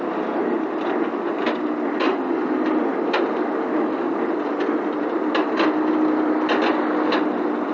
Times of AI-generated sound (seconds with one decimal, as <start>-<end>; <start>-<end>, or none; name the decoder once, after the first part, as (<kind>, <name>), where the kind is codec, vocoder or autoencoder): none